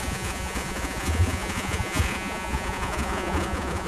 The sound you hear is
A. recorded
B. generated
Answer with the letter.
B